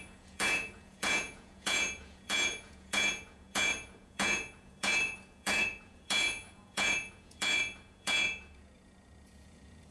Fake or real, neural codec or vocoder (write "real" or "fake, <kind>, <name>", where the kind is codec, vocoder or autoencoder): fake, vocoder, Vocos